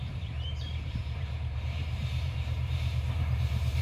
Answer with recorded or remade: remade